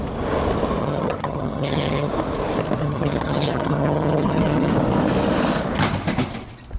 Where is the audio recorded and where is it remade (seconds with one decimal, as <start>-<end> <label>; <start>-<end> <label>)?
0.0-0.8 recorded; 0.8-2.1 remade; 2.1-2.8 recorded; 2.8-4.7 remade; 4.7-6.8 recorded